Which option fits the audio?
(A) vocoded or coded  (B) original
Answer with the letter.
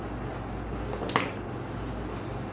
B